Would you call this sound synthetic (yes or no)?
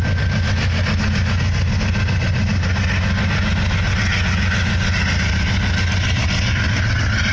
no